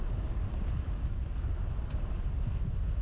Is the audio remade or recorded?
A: recorded